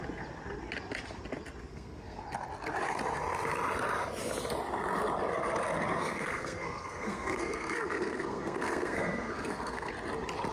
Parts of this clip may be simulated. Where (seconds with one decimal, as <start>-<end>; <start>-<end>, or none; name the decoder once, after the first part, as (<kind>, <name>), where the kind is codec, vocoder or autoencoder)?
1.7-2.2 (codec, SNAC); 6.0-9.9